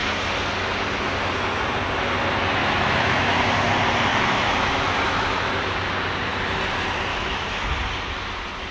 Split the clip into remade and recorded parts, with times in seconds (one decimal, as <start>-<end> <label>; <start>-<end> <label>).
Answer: 0.0-2.6 recorded; 2.6-3.4 remade; 3.4-4.1 recorded; 4.1-5.9 remade; 5.9-7.1 recorded; 7.1-7.7 remade; 7.7-8.7 recorded

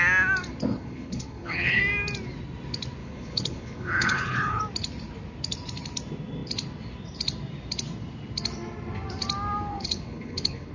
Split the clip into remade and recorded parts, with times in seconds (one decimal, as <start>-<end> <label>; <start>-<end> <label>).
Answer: 0.0-0.7 recorded; 0.7-1.8 remade; 1.8-3.0 recorded; 3.0-4.6 remade; 4.6-9.7 recorded; 9.7-10.7 remade

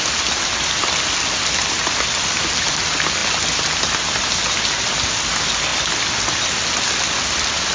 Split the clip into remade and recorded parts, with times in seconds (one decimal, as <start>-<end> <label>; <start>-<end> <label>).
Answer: 0.0-7.7 recorded